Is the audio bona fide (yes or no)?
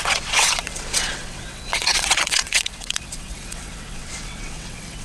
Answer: no